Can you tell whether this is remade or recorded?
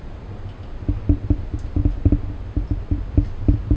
recorded